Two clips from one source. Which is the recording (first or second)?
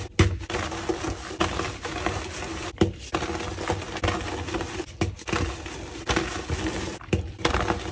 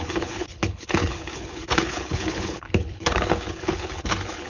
first